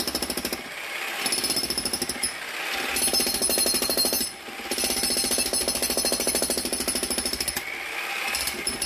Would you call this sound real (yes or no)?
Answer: yes